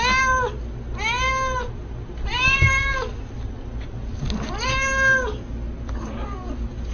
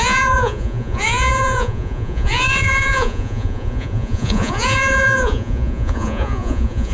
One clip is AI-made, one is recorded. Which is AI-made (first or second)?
second